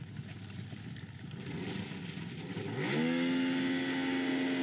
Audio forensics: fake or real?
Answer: real